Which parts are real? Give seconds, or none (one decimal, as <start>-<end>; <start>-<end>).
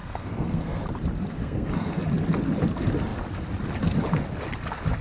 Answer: 0.8-1.4; 1.9-5.0